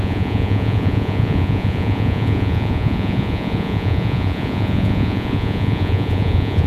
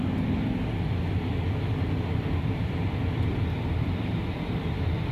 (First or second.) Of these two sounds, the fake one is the first